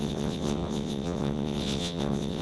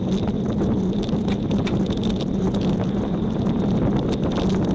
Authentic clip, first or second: second